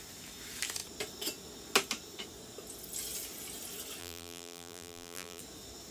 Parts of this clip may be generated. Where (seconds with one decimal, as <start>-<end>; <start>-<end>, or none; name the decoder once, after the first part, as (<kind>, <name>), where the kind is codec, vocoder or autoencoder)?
4.0-5.4 (vocoder, BigVGAN v2)